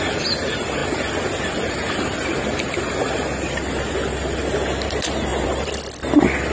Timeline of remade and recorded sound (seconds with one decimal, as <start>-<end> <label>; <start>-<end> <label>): 0.0-5.3 recorded; 5.3-5.8 remade; 5.8-6.5 recorded